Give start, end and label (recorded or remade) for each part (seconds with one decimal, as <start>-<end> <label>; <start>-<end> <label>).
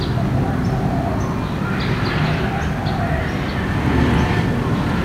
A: 0.0-5.0 recorded